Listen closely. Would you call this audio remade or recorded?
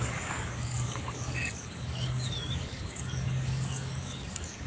remade